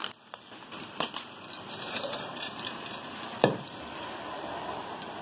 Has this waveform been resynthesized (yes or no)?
yes